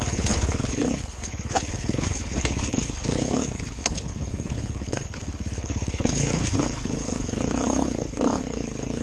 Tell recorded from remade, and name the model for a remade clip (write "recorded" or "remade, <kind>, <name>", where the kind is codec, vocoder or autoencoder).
remade, codec, HILCodec